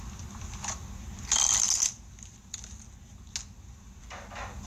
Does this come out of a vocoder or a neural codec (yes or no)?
no